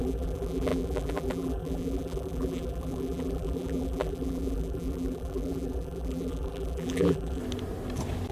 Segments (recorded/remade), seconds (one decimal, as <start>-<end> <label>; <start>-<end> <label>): 0.0-7.4 remade; 7.4-8.3 recorded